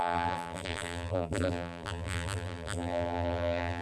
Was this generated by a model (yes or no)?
yes